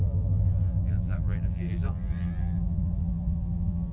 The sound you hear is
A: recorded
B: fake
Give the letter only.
B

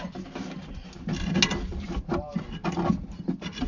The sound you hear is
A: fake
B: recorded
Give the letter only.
B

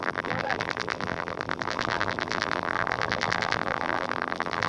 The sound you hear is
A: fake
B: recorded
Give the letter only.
A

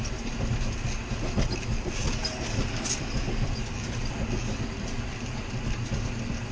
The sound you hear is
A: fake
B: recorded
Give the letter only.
B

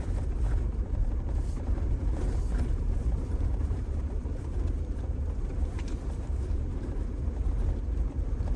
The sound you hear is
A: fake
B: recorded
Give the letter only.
A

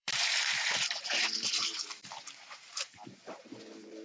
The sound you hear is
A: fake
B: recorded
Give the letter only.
A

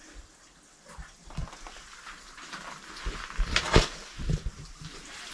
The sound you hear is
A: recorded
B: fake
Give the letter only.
B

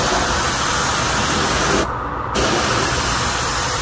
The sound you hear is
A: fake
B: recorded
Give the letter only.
B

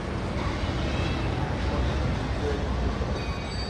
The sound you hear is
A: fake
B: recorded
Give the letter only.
B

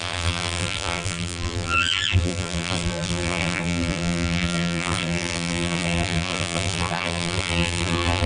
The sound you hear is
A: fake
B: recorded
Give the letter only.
A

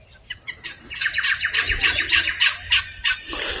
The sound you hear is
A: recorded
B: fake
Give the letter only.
A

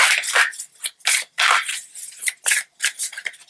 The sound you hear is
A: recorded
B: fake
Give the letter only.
A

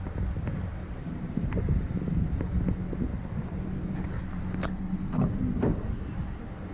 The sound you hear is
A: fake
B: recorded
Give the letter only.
B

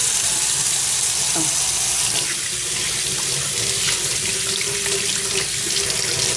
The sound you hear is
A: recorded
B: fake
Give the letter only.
A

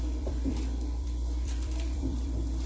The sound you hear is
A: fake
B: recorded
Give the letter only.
A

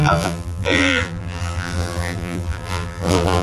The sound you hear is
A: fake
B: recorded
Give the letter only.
A